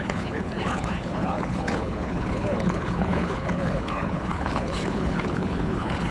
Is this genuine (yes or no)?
no